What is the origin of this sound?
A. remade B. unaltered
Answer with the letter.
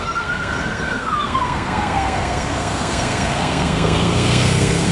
A